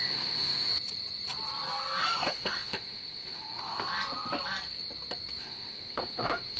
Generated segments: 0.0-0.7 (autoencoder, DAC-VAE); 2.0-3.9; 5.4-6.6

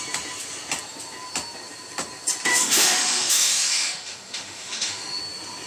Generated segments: 2.5-5.2 (autoencoder, DAC-VAE)

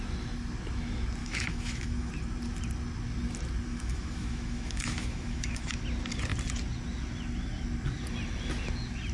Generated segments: 1.2-2.1 (autoencoder, DAC-VAE); 3.7-5.8

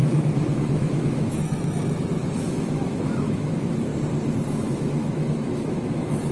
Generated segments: 0.5-3.9 (autoencoder, DAC-VAE); 4.5-6.3

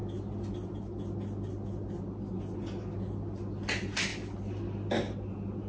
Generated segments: none

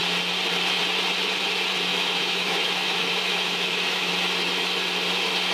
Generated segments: 1.9-4.1 (autoencoder, DAC-VAE)